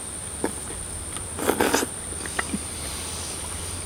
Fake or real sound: real